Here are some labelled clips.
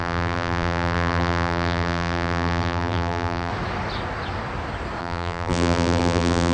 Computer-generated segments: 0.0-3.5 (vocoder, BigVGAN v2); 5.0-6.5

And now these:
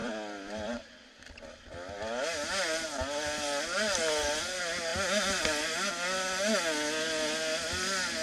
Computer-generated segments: 0.0-4.4 (vocoder, BigVGAN v2)

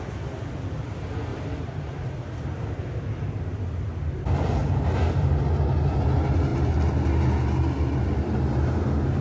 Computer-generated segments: 1.3-3.3 (vocoder, BigVGAN v2); 4.6-5.4

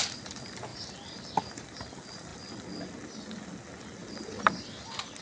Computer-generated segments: 0.7-1.8 (vocoder, BigVGAN v2); 4.0-4.7